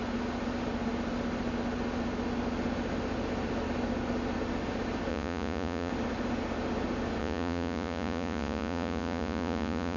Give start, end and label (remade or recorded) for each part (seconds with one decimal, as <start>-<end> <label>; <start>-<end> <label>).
0.0-5.1 recorded; 5.1-5.9 remade; 5.9-7.2 recorded; 7.2-10.0 remade